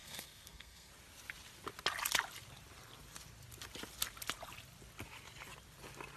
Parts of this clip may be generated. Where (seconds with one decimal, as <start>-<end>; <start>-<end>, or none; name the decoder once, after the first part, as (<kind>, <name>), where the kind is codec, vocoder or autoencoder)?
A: 0.0-0.9 (codec, SNAC)